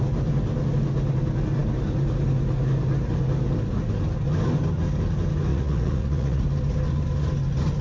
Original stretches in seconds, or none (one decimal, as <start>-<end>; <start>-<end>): 0.0-5.5; 6.4-7.8